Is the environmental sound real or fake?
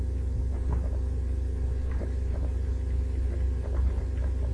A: real